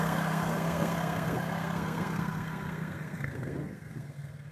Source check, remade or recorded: remade